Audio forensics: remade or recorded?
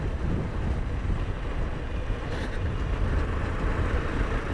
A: remade